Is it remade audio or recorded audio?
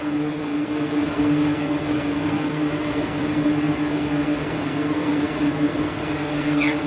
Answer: remade